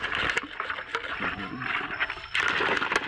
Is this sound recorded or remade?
recorded